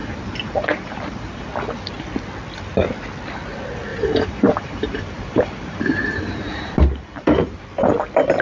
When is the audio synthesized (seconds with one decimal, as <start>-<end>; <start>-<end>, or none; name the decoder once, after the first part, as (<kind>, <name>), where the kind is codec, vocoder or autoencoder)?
0.0-1.5 (vocoder, BigVGAN v2); 3.9-7.6